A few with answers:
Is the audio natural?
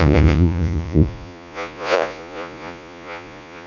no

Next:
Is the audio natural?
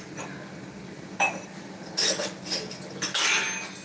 yes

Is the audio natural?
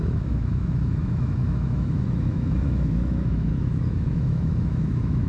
no